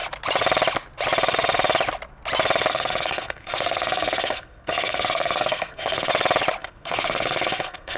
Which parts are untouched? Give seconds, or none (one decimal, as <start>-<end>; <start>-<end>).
0.0-2.7; 6.1-6.6